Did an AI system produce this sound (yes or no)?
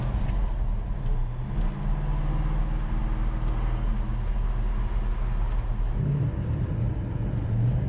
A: no